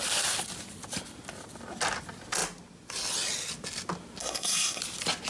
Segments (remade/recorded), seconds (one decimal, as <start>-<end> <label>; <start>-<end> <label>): 0.0-4.2 recorded; 4.2-4.8 remade; 4.8-5.3 recorded